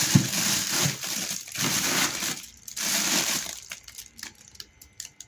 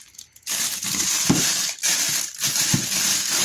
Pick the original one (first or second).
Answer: first